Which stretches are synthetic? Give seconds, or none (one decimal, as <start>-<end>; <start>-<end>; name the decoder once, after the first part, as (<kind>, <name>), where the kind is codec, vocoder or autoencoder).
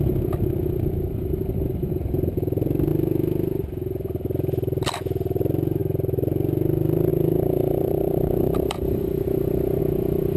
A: 7.1-9.8 (vocoder, BigVGAN v2)